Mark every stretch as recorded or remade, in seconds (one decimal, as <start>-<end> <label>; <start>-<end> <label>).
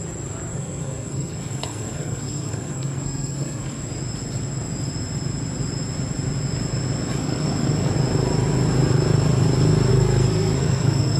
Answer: 0.0-0.5 recorded; 0.5-3.8 remade; 3.8-7.2 recorded; 7.2-7.9 remade; 7.9-9.9 recorded; 9.9-11.2 remade